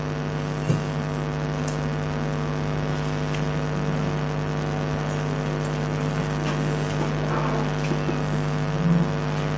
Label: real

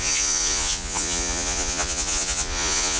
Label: fake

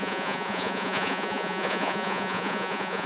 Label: fake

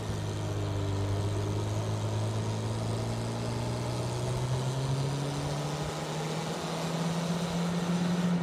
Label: real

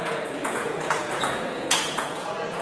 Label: fake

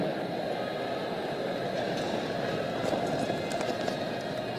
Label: real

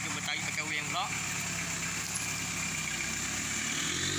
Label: real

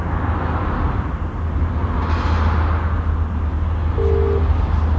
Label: real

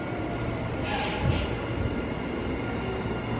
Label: real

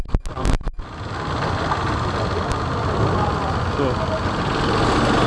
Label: real